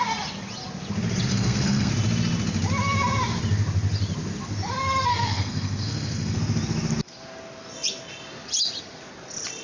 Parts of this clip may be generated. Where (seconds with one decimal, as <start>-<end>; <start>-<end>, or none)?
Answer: 1.3-1.9; 5.1-6.4